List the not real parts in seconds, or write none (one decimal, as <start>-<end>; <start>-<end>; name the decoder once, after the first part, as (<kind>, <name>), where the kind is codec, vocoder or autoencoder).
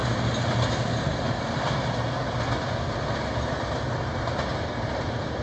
3.2-5.4 (vocoder, BigVGAN v2)